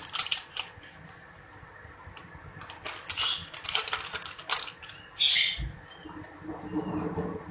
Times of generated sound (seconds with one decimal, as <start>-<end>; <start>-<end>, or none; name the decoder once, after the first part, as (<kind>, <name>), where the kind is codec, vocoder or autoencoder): none